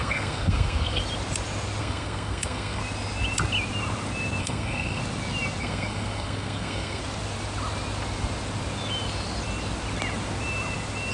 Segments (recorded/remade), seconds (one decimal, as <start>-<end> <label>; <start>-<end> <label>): 0.0-1.0 remade; 1.0-1.8 recorded; 1.8-2.8 remade; 2.8-4.4 recorded; 4.4-5.0 remade; 5.0-5.6 recorded; 5.6-7.0 remade; 7.0-11.1 recorded